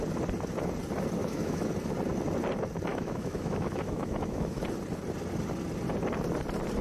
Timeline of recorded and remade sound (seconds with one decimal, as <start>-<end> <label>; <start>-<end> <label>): 0.0-1.2 recorded; 1.2-1.7 remade; 1.7-2.9 recorded; 2.9-4.6 remade; 4.6-6.8 recorded